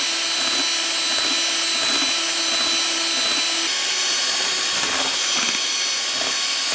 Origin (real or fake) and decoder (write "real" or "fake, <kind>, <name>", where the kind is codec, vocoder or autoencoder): real